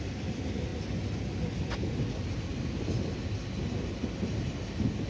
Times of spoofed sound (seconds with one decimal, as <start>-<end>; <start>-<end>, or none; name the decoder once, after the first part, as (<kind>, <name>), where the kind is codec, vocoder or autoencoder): none